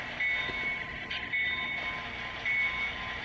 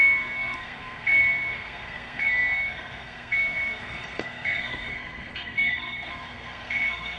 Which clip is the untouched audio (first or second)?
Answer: first